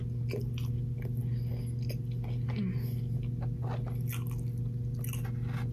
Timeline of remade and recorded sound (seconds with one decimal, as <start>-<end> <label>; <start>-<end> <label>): 0.0-5.7 recorded